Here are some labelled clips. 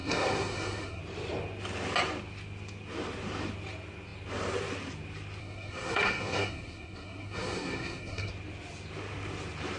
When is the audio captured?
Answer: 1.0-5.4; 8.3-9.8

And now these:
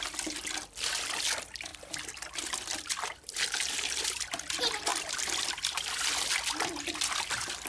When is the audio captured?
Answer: 0.0-1.7; 4.5-4.9; 6.7-7.7

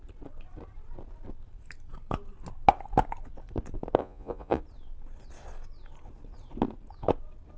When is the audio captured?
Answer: 0.0-4.0; 4.6-7.6

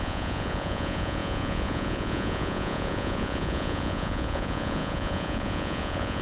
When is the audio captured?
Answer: none